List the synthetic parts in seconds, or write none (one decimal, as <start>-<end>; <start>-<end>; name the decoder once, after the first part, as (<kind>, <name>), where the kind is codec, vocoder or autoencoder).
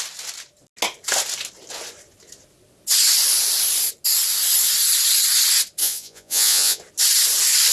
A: 5.8-6.8 (vocoder, Vocos)